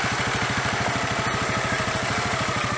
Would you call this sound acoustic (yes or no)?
yes